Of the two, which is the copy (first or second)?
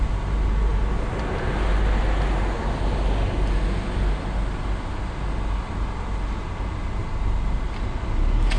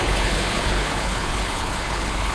second